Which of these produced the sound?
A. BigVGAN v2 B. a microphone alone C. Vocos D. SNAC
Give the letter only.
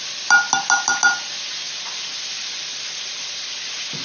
B